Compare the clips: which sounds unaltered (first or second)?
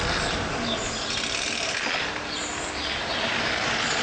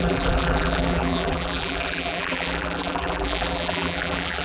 first